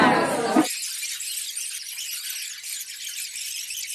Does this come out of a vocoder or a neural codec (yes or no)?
no